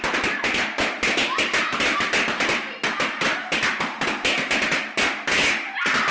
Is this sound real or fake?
real